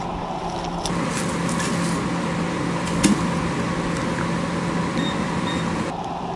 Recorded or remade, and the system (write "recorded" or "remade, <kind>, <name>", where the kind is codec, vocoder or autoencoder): recorded